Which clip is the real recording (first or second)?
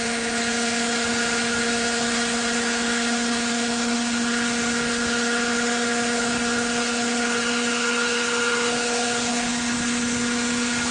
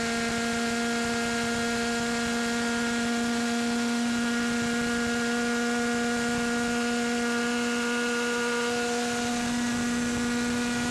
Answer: second